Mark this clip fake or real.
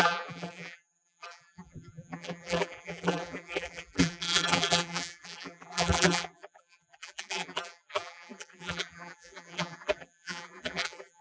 fake